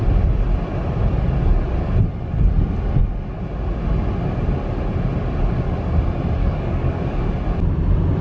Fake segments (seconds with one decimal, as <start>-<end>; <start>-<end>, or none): 6.4-7.3

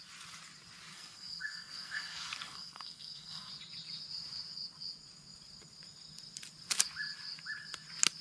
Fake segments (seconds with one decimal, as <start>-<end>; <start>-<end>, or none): 0.9-3.5

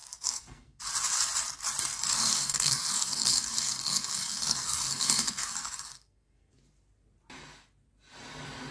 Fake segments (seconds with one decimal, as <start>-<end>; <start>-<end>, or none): 0.0-0.8; 1.9-6.5

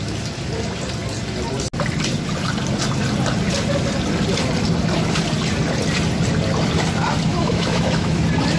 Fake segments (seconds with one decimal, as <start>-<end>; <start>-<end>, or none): 7.3-8.2

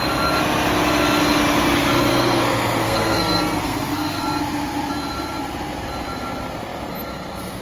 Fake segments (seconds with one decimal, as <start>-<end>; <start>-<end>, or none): 2.1-4.2

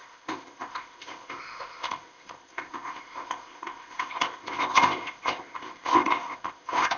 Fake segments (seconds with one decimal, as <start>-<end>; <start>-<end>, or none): 0.0-7.0

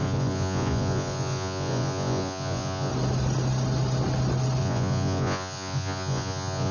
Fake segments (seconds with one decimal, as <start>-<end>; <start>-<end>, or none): 0.0-2.9; 4.6-6.7